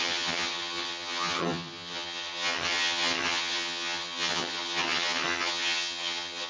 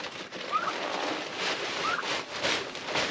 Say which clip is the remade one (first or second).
first